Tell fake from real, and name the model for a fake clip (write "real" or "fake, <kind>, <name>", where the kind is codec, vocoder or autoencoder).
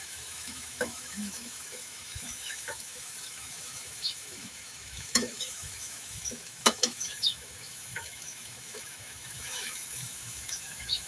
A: fake, autoencoder, DAC-VAE